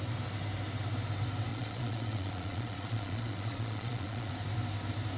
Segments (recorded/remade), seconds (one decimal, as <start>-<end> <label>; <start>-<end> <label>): 0.0-1.5 recorded; 1.5-4.3 remade; 4.3-5.2 recorded